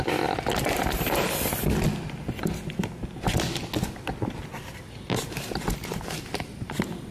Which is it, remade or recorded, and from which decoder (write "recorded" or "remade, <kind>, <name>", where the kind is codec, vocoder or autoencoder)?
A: recorded